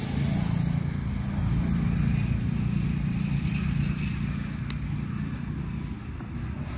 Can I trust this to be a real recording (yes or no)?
yes